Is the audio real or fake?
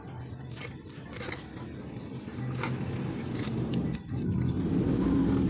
real